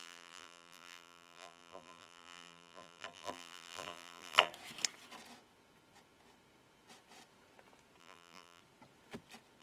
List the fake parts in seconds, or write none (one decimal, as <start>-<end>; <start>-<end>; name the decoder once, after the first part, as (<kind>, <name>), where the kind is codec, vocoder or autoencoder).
0.0-4.5 (vocoder, BigVGAN v2); 8.0-8.6